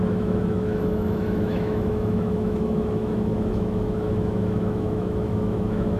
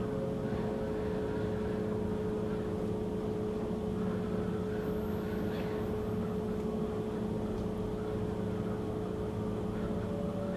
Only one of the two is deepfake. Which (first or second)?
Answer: first